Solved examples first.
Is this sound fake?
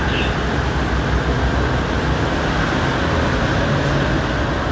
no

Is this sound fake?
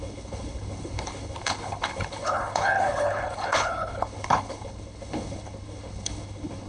yes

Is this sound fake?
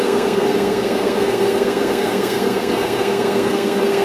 yes